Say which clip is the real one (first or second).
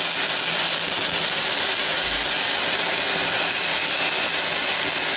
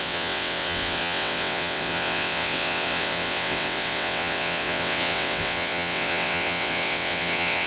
first